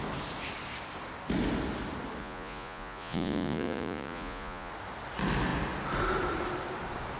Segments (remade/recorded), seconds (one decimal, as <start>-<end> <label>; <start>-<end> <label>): 0.0-2.2 recorded; 2.2-4.7 remade; 4.7-7.2 recorded